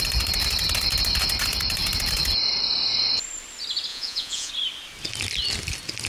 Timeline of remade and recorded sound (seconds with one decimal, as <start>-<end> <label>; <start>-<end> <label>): 0.0-3.9 recorded; 3.9-4.5 remade; 4.5-6.1 recorded